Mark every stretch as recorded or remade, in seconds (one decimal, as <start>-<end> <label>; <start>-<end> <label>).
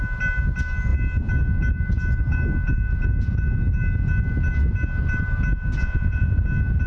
0.0-5.8 recorded; 5.8-6.4 remade; 6.4-6.9 recorded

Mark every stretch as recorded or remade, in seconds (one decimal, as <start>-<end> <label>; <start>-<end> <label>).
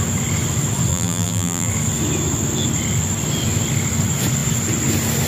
0.0-0.9 recorded; 0.9-1.7 remade; 1.7-5.3 recorded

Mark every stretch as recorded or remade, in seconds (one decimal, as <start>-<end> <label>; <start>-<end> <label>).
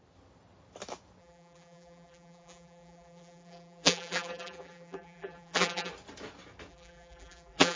0.0-1.2 recorded; 1.2-5.9 remade; 5.9-6.7 recorded; 6.7-7.8 remade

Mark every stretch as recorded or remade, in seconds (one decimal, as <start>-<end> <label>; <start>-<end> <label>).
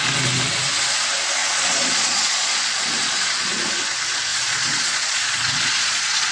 0.0-1.4 recorded; 1.4-3.7 remade; 3.7-4.3 recorded; 4.3-6.3 remade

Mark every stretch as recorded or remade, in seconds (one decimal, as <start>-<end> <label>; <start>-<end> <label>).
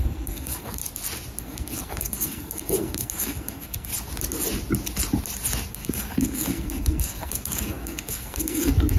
0.0-0.8 remade; 0.8-1.4 recorded; 1.4-3.9 remade; 3.9-5.7 recorded; 5.7-9.0 remade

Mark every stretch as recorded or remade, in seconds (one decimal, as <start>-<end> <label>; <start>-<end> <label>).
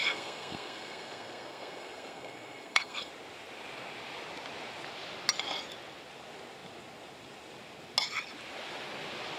0.0-3.1 remade; 3.1-9.4 recorded